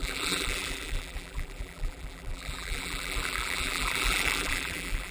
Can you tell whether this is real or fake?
fake